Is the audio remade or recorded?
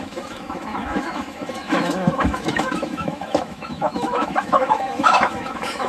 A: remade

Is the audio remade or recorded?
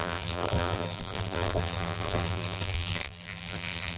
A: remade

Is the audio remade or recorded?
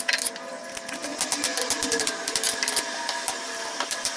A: recorded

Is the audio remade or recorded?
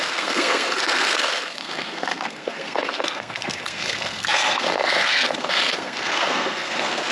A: remade